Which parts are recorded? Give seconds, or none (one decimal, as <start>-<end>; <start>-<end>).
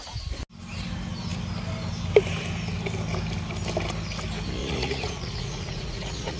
0.0-4.6